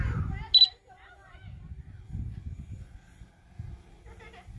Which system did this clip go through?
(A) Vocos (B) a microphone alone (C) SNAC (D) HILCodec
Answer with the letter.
B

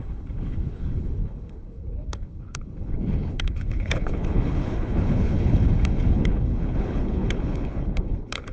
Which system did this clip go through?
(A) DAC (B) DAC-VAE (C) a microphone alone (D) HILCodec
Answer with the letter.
D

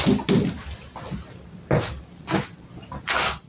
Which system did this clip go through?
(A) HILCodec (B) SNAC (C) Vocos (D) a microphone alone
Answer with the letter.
D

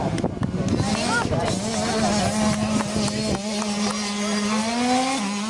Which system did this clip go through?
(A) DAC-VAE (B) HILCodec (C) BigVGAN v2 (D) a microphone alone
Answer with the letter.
D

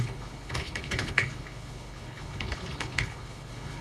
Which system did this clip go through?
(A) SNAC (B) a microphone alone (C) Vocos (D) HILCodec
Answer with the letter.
D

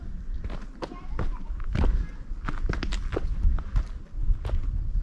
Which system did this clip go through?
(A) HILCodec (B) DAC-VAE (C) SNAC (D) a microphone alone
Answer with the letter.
D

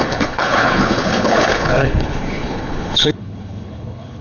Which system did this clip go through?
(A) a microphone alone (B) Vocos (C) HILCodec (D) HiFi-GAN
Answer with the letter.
C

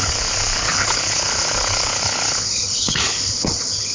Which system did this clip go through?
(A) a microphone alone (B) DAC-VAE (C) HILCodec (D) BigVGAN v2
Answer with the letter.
C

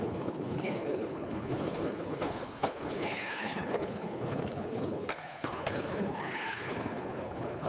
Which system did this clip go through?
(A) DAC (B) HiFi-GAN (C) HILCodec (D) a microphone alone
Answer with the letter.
C